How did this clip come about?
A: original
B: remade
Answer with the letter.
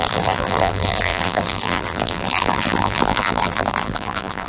B